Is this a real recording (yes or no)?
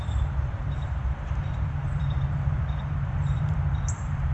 no